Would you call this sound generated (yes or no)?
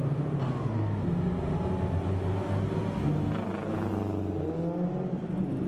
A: no